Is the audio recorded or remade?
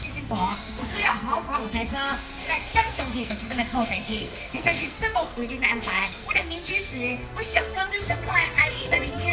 remade